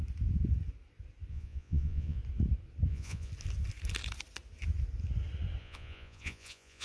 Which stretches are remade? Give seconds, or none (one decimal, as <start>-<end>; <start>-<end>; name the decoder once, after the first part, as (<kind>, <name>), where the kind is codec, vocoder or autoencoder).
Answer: 1.3-2.2 (vocoder, Vocos); 2.9-3.3; 5.6-6.8